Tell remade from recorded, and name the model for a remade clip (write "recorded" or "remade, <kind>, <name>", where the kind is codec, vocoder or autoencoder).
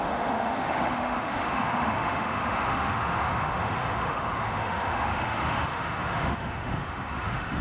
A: remade, autoencoder, DAC-VAE